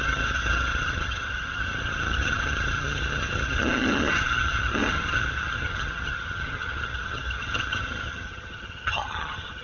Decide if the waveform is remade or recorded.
remade